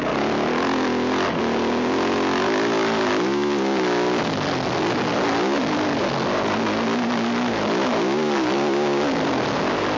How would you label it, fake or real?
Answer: real